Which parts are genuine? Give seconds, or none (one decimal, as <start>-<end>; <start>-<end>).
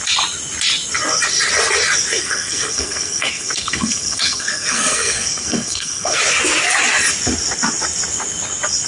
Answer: 0.0-2.2; 6.2-8.9